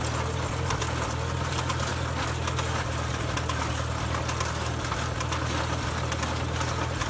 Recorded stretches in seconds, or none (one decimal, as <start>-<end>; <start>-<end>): 0.0-7.1